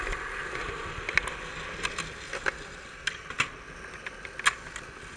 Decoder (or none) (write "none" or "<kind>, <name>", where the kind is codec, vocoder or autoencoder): none